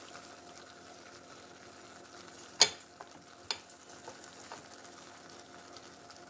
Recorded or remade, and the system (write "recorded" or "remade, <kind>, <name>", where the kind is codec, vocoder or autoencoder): recorded